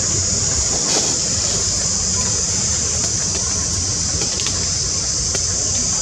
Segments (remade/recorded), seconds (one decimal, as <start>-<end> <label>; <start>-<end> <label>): 0.0-2.1 recorded; 2.1-2.8 remade; 2.8-6.0 recorded